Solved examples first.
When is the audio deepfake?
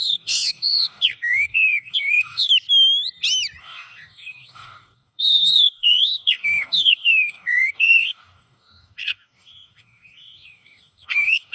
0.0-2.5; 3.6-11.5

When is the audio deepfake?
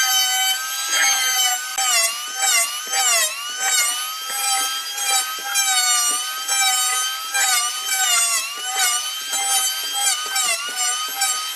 none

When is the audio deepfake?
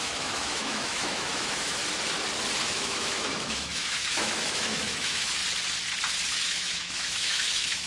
0.0-1.8; 2.6-5.4; 6.3-7.9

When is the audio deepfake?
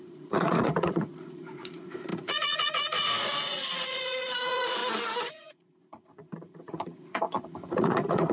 0.0-4.8; 5.3-8.3